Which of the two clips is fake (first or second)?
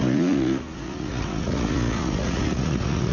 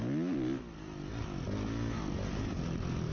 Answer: first